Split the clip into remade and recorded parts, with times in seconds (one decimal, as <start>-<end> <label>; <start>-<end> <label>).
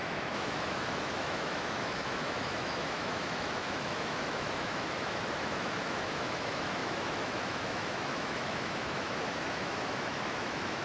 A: 0.0-10.8 remade